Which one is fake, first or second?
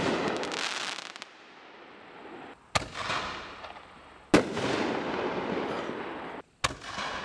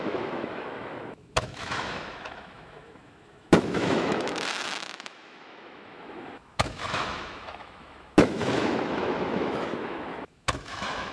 second